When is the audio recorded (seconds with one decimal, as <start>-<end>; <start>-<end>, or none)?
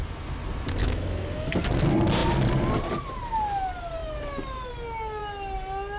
0.0-0.8; 1.5-6.0